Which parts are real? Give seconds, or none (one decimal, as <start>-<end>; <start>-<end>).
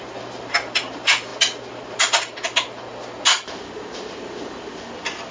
0.0-5.3